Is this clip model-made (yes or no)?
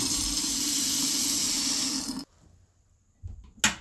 no